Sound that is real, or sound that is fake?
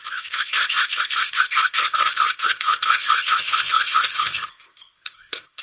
fake